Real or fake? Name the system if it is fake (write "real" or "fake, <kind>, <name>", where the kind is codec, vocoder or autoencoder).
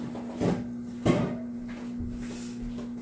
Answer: real